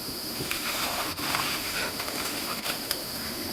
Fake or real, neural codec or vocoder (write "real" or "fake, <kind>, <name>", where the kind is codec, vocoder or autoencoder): fake, autoencoder, DAC-VAE